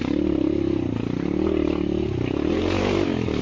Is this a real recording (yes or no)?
no